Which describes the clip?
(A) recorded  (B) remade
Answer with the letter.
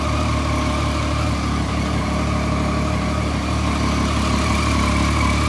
A